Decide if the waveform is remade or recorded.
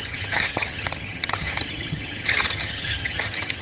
remade